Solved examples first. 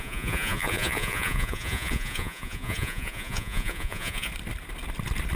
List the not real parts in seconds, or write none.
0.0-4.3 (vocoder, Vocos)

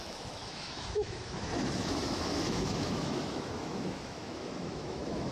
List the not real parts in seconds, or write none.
0.0-5.3 (autoencoder, DAC-VAE)

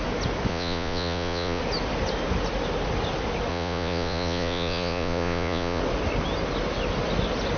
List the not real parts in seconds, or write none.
0.5-1.6 (vocoder, Vocos); 3.5-5.8

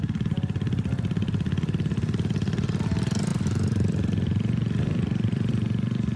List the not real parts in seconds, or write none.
3.3-5.5 (vocoder, BigVGAN v2)

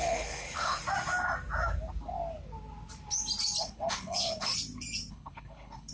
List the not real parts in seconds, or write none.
0.0-0.8 (codec, HILCodec); 3.6-4.5; 5.1-5.9

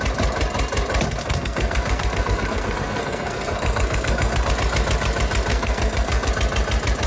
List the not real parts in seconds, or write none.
1.2-4.5 (codec, SNAC); 5.5-6.3

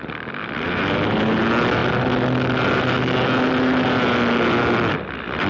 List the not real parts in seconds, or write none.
none

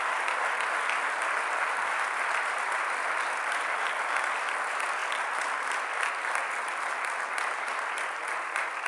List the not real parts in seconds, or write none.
none